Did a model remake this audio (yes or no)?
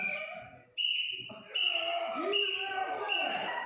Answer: yes